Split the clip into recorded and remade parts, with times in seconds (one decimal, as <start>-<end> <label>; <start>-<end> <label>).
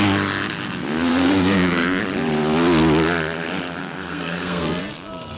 0.0-1.1 recorded; 1.1-2.0 remade; 2.0-3.8 recorded; 3.8-4.8 remade; 4.8-5.4 recorded